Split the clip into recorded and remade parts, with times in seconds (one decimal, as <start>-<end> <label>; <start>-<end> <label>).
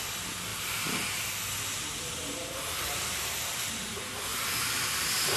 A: 0.0-0.5 recorded; 0.5-3.7 remade; 3.7-4.3 recorded; 4.3-5.0 remade; 5.0-5.4 recorded